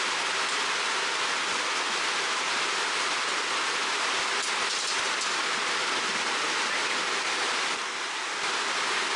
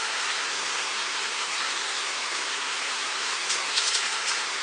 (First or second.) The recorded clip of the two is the first